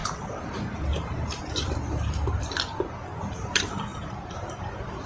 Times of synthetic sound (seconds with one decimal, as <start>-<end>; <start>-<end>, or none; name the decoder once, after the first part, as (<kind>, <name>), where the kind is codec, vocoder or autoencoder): 0.9-2.4 (vocoder, BigVGAN v2); 3.9-5.1